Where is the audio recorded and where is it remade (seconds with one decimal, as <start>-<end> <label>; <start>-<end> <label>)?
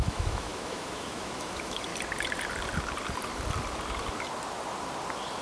0.0-1.9 remade; 1.9-5.4 recorded